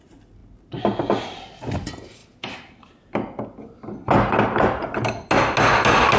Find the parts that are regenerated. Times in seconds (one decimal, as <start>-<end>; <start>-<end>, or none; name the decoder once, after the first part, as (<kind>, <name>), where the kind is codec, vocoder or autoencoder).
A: none